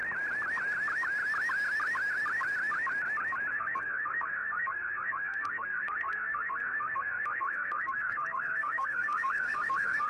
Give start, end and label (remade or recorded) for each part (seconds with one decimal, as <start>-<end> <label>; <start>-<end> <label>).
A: 0.0-3.5 recorded; 3.5-10.1 remade